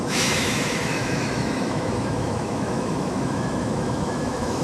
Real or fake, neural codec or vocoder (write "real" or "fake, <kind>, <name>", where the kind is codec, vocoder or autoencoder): fake, autoencoder, DAC-VAE